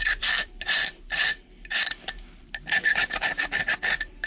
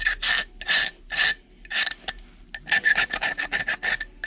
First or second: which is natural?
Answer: second